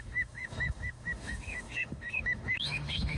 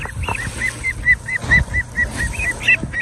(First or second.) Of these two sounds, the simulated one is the first